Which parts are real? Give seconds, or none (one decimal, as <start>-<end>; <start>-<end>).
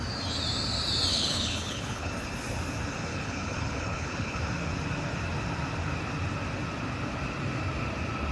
0.0-1.1; 2.1-3.1; 4.4-8.3